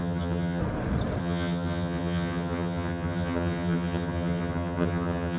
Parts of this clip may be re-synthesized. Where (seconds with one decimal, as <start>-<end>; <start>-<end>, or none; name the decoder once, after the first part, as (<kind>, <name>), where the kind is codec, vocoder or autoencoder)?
0.0-0.6 (vocoder, HiFi-GAN); 1.2-5.4

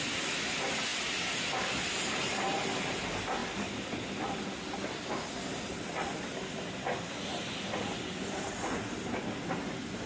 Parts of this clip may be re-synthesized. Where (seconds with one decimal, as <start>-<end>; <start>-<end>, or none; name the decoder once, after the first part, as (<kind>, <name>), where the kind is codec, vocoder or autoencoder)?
none

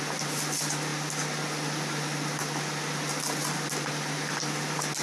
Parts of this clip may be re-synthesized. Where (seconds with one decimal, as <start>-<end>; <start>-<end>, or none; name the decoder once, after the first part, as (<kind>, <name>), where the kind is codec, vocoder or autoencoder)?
none

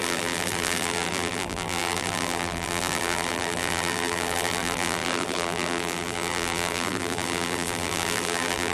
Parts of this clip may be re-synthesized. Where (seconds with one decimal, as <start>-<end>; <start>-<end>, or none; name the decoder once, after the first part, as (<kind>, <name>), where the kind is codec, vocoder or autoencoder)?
0.0-8.7 (vocoder, BigVGAN v2)